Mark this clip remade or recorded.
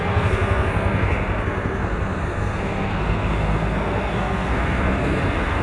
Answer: remade